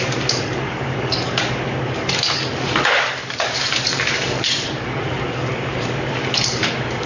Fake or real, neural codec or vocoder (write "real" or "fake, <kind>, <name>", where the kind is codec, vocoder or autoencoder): fake, codec, DAC